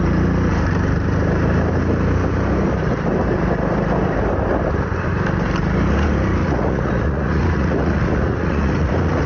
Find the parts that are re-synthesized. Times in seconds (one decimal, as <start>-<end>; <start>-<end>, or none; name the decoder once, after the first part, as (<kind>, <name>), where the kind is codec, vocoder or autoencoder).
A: 6.4-9.3 (vocoder, Vocos)